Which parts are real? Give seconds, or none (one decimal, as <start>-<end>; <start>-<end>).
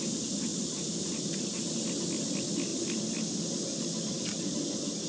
0.0-5.1